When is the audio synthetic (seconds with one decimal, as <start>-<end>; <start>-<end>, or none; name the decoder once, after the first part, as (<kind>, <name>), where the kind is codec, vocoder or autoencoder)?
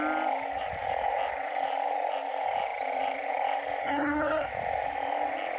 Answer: 3.8-4.5 (codec, SNAC)